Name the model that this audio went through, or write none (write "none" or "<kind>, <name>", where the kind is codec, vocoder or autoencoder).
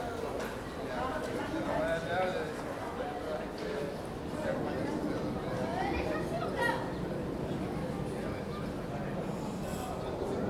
none